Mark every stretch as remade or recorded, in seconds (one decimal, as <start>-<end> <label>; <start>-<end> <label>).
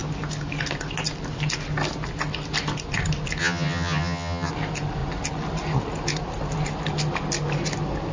0.0-3.4 recorded; 3.4-4.5 remade; 4.5-8.1 recorded